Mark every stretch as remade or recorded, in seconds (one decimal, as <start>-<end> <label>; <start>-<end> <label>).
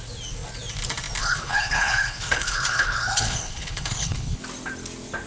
0.0-1.2 recorded; 1.2-4.4 remade; 4.4-5.3 recorded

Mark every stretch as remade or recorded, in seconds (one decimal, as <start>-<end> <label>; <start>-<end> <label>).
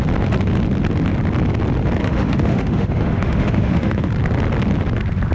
0.0-2.0 recorded; 2.0-4.1 remade; 4.1-5.3 recorded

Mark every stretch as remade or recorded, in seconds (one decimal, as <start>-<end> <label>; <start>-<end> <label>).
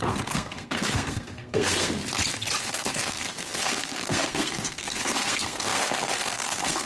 0.0-2.0 remade; 2.0-2.6 recorded; 2.6-6.9 remade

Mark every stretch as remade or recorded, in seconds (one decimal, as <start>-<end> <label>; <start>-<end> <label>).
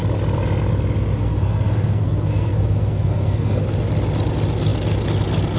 0.0-1.2 recorded; 1.2-3.6 remade; 3.6-5.6 recorded